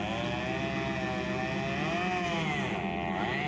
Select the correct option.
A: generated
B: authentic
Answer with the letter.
B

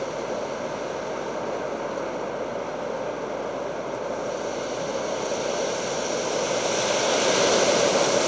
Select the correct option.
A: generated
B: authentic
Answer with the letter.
B